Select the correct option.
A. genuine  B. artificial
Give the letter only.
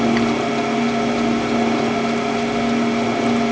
A